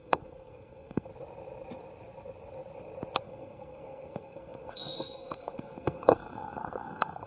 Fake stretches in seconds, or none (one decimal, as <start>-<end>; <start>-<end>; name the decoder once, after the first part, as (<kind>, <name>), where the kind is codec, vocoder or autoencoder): 0.0-1.1 (codec, SNAC); 3.2-7.3